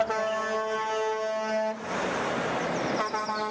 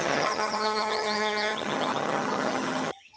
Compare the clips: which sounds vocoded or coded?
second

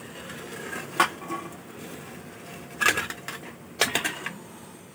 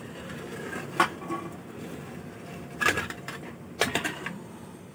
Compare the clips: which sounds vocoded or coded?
second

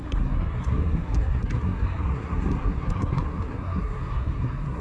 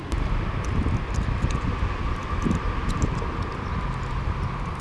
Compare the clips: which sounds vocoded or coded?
first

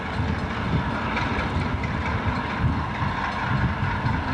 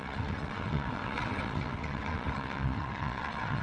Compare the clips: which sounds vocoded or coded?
second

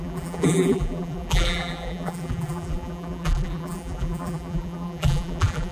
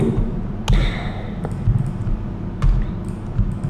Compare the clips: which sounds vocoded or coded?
first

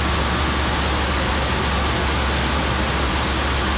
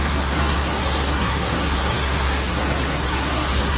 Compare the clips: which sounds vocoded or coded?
second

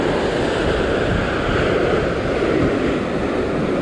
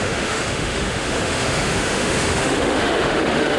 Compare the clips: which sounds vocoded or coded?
second